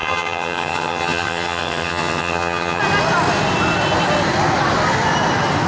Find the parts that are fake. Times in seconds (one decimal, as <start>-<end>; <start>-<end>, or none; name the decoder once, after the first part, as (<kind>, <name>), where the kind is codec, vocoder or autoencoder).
0.0-2.8 (vocoder, HiFi-GAN)